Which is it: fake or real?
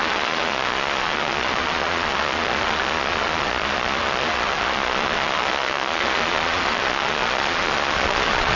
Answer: fake